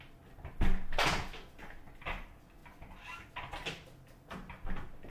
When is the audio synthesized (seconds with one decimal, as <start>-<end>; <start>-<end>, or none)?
none